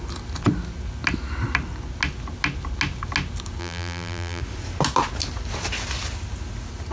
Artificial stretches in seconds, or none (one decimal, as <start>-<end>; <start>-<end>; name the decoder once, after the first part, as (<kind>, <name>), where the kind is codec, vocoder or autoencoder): 3.6-4.4 (vocoder, BigVGAN v2)